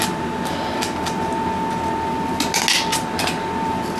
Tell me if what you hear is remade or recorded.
recorded